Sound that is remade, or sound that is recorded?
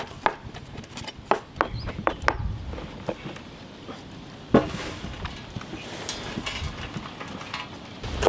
recorded